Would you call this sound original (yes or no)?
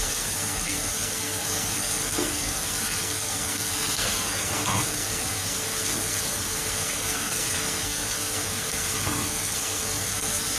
no